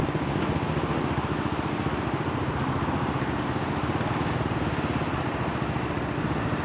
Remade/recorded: recorded